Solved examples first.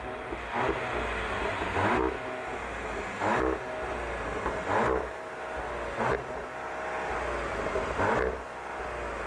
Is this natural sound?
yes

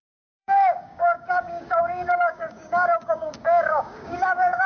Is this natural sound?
no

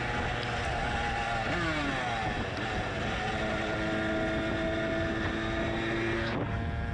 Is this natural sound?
yes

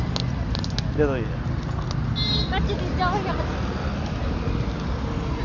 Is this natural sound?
yes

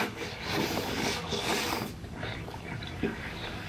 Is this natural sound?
no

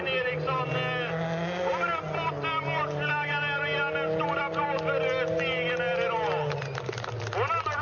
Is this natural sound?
yes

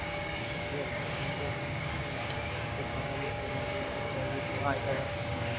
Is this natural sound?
no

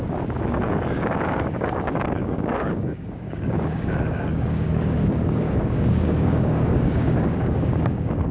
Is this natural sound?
no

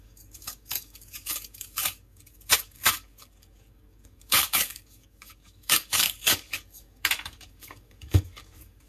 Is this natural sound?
no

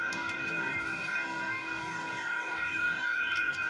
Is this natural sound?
no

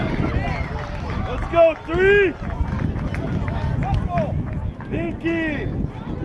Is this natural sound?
yes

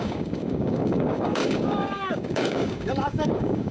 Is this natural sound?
no